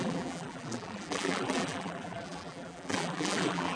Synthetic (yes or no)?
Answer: yes